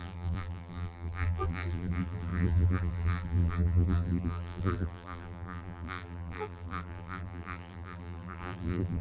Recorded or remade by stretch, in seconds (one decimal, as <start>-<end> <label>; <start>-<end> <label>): 0.0-9.0 remade